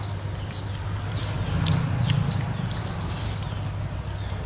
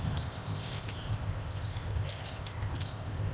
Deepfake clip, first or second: second